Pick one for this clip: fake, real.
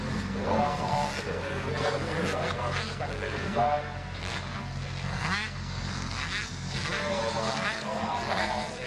fake